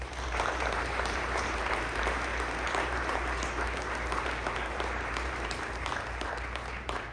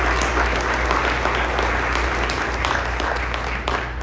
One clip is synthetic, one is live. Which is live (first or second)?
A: second